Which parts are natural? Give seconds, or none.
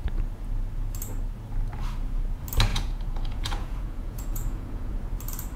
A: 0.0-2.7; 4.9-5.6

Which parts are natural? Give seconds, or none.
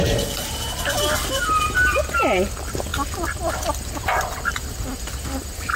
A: 0.0-5.8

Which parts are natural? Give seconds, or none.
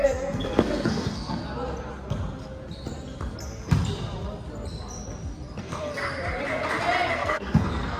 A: 1.4-5.6; 6.0-7.1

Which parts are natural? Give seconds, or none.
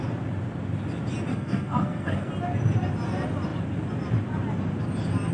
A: 0.0-1.3; 2.3-5.3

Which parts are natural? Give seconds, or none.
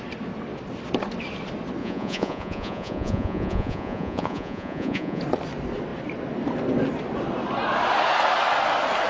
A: 0.0-1.8; 5.2-9.1